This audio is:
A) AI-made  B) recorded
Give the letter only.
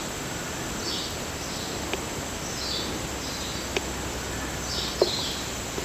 A